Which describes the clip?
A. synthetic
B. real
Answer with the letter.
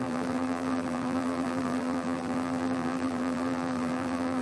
A